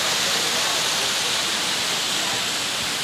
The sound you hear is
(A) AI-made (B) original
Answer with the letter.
B